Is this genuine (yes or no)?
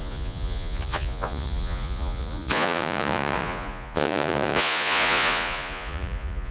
no